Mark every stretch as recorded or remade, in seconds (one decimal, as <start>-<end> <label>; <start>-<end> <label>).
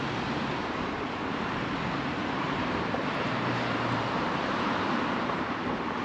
0.0-2.2 recorded; 2.2-5.5 remade; 5.5-6.0 recorded